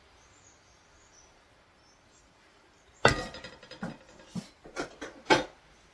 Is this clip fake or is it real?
real